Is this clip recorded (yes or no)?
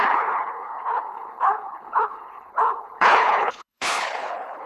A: no